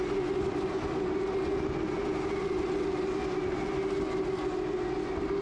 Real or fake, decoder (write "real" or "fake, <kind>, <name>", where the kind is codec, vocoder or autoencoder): real